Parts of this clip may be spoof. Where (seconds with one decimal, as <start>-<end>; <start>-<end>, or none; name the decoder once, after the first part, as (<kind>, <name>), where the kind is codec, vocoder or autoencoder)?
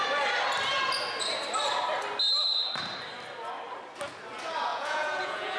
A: 4.7-5.6 (vocoder, Vocos)